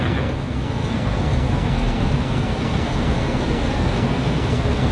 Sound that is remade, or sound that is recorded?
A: remade